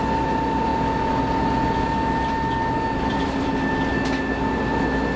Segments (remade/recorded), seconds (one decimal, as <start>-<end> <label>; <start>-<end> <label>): 0.0-5.2 recorded